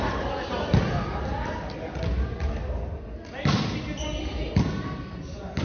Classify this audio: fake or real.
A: real